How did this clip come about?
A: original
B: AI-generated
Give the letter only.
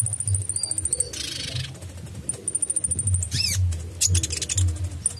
A